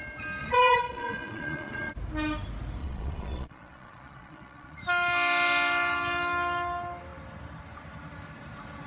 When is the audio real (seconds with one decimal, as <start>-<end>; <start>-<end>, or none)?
0.0-0.4; 1.9-2.8; 4.8-8.9